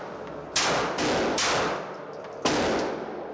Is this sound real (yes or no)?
yes